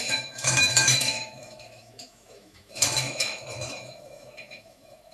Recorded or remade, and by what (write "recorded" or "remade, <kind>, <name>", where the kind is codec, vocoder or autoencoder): remade, autoencoder, DAC-VAE